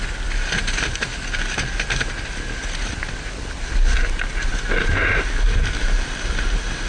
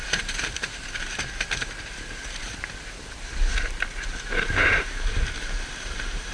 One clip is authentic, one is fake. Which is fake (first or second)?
second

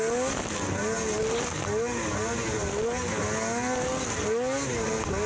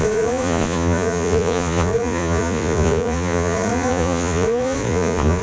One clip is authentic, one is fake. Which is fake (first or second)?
second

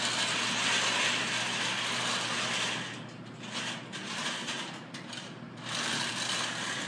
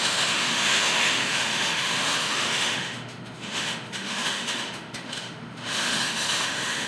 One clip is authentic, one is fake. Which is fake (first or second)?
second